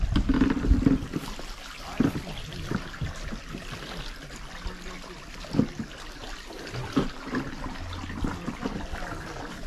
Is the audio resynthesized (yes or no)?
no